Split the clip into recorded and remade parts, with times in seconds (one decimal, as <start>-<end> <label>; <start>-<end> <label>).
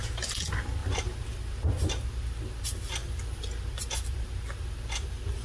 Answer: 0.0-5.4 recorded